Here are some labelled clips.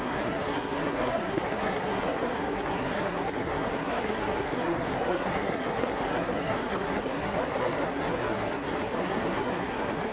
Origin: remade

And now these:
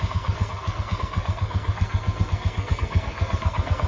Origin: remade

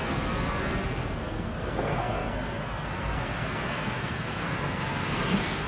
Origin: remade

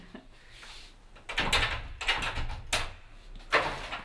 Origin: recorded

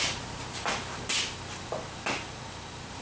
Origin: recorded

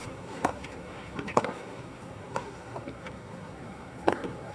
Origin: remade